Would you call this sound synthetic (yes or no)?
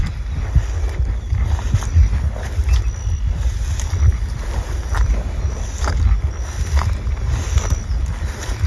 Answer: no